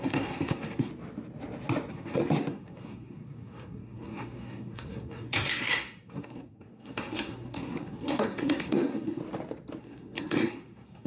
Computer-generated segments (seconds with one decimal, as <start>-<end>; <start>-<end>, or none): 0.0-0.9; 1.9-9.2; 9.8-11.1